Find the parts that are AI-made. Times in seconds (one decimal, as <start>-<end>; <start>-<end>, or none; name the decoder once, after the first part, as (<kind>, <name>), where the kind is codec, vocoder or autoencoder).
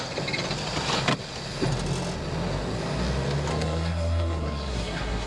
3.5-5.3 (codec, SNAC)